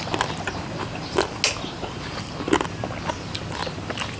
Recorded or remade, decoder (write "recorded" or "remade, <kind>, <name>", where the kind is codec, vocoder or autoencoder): recorded